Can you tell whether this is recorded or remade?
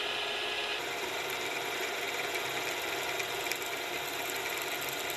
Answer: remade